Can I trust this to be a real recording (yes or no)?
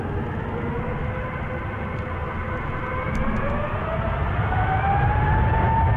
yes